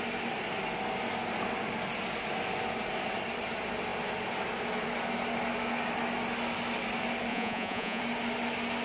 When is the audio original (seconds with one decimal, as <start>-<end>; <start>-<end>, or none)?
0.0-7.3; 8.0-8.8